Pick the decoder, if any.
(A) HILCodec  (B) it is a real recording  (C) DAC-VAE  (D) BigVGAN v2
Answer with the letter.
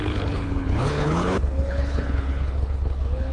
A